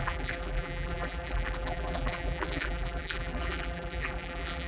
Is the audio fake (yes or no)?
yes